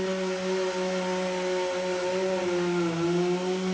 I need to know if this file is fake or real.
real